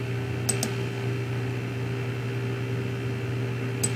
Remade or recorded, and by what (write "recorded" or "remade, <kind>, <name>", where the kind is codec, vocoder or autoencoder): recorded